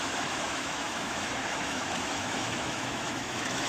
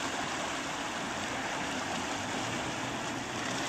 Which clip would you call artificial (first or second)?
first